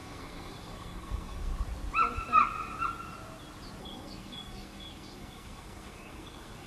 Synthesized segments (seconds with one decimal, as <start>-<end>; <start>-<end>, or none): 0.0-1.5; 3.8-6.7